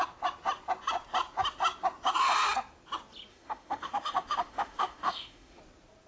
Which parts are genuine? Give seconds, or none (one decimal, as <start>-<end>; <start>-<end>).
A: 0.0-3.3; 5.6-6.1